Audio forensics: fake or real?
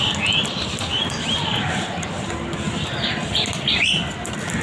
real